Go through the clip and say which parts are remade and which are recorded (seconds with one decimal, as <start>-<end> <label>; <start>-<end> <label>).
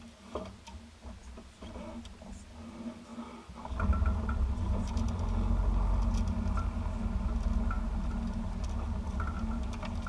0.0-10.1 recorded